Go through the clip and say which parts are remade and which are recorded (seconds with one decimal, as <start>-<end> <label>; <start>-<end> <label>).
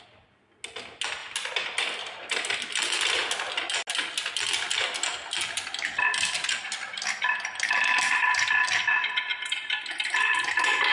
0.0-10.9 recorded